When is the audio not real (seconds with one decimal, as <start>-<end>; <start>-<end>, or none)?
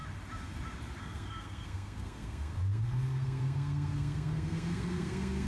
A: 1.0-5.5